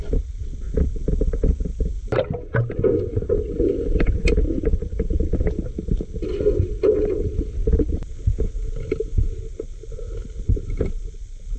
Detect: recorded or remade recorded